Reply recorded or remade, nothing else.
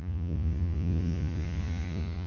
remade